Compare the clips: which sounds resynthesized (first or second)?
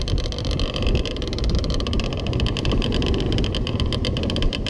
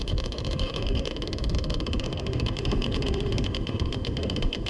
second